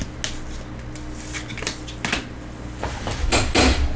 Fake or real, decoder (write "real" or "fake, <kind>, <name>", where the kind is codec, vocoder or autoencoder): real